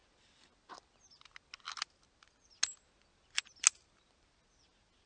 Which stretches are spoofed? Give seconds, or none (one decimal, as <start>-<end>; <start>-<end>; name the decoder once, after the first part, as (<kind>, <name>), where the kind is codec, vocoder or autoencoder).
none